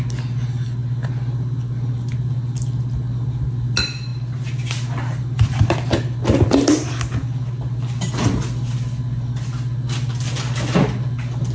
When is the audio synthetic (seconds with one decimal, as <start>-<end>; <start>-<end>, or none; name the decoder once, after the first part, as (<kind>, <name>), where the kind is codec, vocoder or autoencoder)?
none